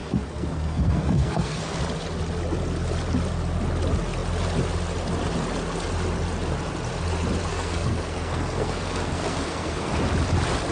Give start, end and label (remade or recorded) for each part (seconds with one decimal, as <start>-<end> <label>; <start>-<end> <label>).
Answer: 0.0-1.8 remade; 1.8-7.5 recorded; 7.5-9.9 remade; 9.9-10.7 recorded